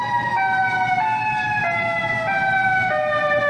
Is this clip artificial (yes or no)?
no